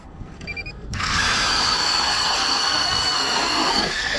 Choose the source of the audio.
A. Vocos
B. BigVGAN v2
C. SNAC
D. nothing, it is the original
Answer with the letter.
C